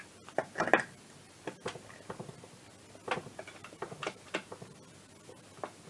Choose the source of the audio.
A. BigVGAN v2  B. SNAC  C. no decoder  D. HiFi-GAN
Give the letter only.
C